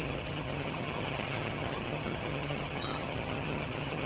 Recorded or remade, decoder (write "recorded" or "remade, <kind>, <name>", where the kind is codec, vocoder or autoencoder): remade, vocoder, HiFi-GAN